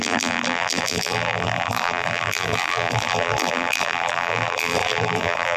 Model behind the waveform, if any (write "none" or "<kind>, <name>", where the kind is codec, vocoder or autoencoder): vocoder, BigVGAN v2